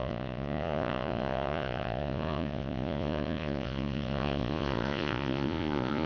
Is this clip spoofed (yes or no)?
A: yes